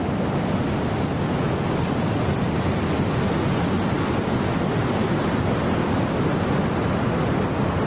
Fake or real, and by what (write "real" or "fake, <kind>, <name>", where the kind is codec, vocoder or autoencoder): real